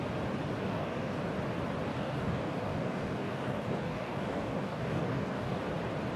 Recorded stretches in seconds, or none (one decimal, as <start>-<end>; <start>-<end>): 0.0-0.6; 1.2-1.9; 5.6-6.2